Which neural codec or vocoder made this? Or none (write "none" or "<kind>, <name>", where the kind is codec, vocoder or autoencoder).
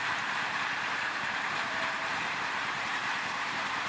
vocoder, BigVGAN v2